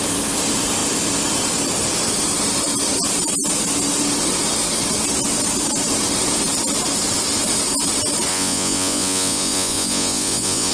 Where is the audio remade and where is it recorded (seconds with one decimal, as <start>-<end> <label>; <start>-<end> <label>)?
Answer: 0.0-8.3 recorded; 8.3-10.7 remade